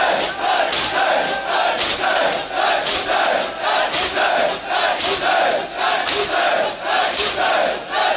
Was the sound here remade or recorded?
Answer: recorded